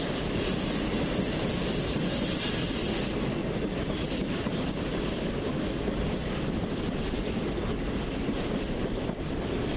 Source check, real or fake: real